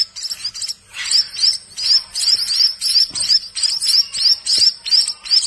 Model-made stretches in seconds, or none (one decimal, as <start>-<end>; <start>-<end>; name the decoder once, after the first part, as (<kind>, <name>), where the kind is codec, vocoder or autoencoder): none